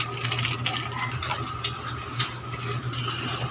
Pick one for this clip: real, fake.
real